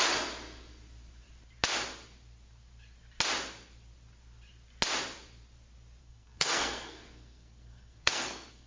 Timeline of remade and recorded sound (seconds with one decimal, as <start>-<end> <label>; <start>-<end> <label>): 0.0-6.0 recorded; 6.0-8.7 remade